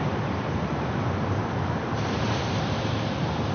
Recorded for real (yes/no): yes